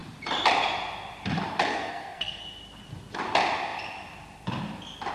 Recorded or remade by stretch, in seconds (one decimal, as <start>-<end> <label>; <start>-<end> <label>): 0.0-1.7 recorded; 1.7-2.4 remade; 2.4-5.1 recorded

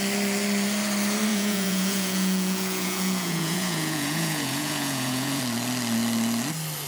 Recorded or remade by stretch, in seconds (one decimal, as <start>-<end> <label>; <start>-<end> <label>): 0.0-1.3 recorded; 1.3-5.4 remade; 5.4-6.9 recorded

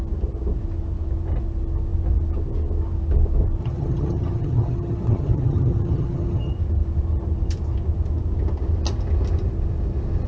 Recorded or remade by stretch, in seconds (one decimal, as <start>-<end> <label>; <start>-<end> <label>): 0.0-3.6 recorded; 3.6-6.5 remade; 6.5-10.3 recorded

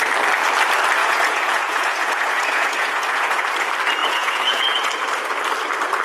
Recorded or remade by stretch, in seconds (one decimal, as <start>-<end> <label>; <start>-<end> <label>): 0.0-1.0 recorded; 1.0-3.4 remade; 3.4-4.0 recorded; 4.0-4.9 remade; 4.9-6.0 recorded

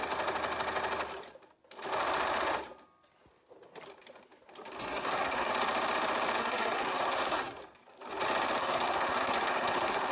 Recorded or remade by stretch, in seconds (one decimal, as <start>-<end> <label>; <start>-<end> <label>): 0.0-4.8 recorded; 4.8-5.5 remade; 5.5-6.4 recorded; 6.4-7.6 remade; 7.6-8.6 recorded; 8.6-10.1 remade